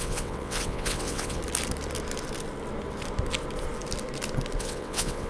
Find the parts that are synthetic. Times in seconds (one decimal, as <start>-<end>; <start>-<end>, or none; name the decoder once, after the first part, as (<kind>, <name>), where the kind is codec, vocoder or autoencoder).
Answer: 0.0-1.4 (vocoder, WaveNeXt); 4.6-5.3